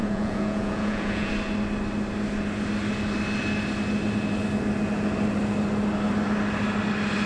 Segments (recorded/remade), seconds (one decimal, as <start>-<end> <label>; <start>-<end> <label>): 0.0-1.3 remade; 1.3-7.3 recorded